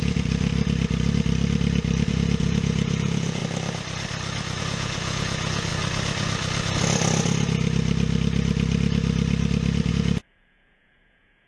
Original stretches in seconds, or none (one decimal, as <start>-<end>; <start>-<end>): 0.5-2.1; 3.4-4.6; 5.7-9.9